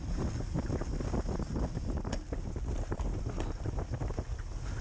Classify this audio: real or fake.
real